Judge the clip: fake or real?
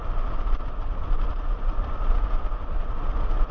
real